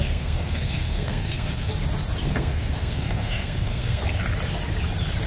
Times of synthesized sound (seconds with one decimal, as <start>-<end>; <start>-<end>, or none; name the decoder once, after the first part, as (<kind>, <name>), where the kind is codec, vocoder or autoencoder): 0.0-1.7 (codec, SNAC); 2.2-4.0